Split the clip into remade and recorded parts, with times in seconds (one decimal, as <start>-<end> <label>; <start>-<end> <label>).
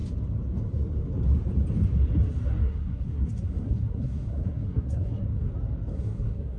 0.0-2.6 recorded; 2.6-5.5 remade; 5.5-5.9 recorded; 5.9-6.6 remade